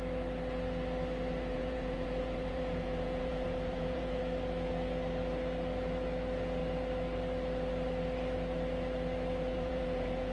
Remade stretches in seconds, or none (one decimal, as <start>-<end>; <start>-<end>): 1.5-4.2; 9.5-10.3